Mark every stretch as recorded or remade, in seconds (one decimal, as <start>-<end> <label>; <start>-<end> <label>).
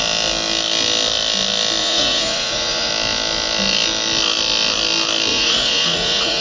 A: 0.0-1.8 recorded; 1.8-2.9 remade; 2.9-5.3 recorded; 5.3-6.4 remade